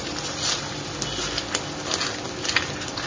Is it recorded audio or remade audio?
recorded